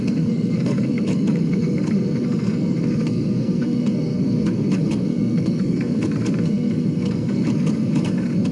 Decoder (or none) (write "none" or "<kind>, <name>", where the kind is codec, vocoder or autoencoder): codec, SNAC